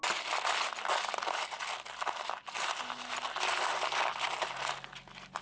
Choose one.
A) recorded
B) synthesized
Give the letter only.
A